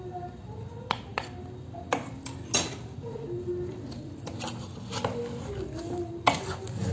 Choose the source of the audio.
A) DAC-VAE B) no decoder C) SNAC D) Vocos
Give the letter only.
B